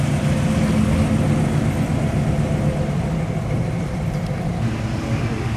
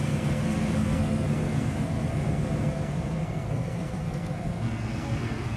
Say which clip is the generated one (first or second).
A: second